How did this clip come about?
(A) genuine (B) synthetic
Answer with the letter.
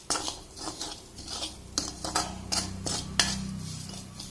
A